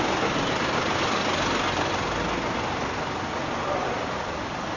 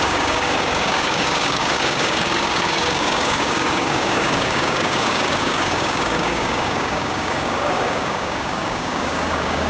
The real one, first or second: first